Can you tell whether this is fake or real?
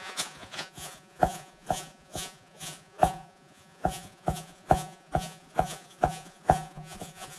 fake